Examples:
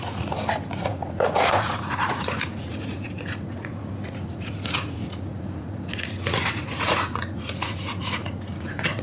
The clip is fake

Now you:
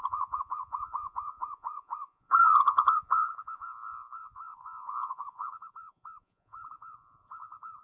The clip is fake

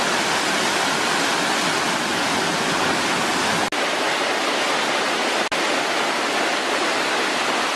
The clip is real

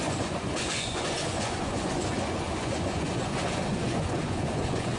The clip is fake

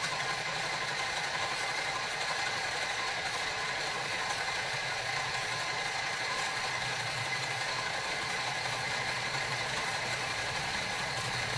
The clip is fake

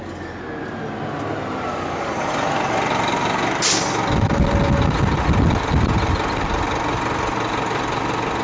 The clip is real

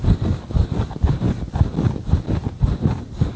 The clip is real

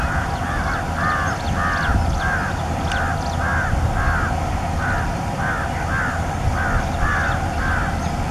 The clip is real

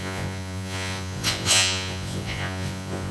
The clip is fake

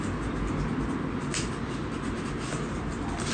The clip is real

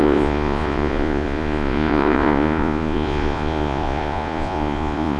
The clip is fake